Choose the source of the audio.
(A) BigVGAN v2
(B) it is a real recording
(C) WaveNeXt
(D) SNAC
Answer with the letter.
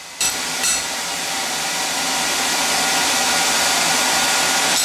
B